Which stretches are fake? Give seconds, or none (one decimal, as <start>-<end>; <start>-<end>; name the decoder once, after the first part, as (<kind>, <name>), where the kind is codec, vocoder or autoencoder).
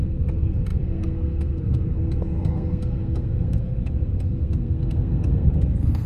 0.0-6.1 (codec, SNAC)